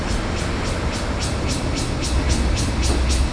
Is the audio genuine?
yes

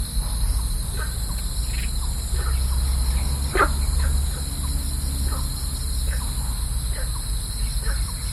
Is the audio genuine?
yes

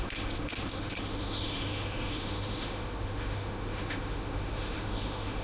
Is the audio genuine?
no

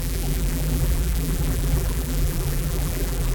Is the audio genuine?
no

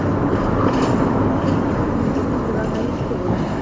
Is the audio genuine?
yes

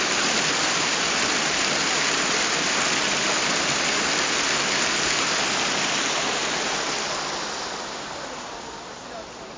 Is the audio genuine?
yes